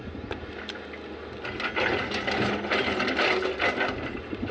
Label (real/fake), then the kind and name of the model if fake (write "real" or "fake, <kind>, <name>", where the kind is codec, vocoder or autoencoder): real